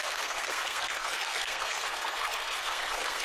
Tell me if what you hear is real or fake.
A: fake